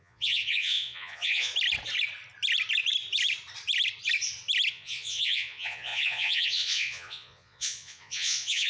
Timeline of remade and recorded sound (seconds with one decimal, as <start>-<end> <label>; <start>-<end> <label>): 0.0-1.5 remade; 1.5-4.7 recorded; 4.7-8.7 remade